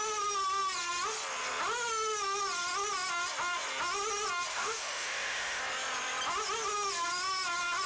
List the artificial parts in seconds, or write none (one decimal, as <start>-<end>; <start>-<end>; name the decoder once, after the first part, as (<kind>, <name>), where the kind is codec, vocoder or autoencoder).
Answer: 4.5-5.6 (autoencoder, DAC-VAE)